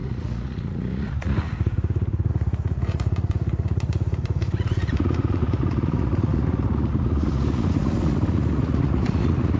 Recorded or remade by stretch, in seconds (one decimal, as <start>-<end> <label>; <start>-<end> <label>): 0.0-9.6 remade